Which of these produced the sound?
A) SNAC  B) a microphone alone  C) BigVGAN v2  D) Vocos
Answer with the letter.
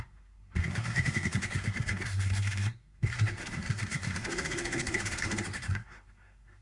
A